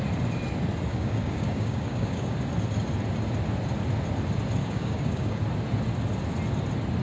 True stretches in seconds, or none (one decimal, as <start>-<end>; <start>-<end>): 0.0-0.9; 2.4-4.6; 5.4-7.0